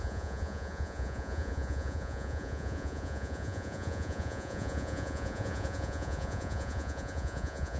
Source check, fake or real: fake